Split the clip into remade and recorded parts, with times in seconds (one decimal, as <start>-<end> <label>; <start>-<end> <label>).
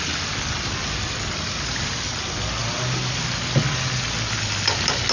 0.0-5.1 recorded